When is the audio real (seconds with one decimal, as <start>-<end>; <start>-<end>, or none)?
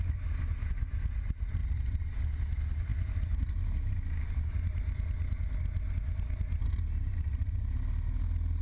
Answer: 0.0-8.6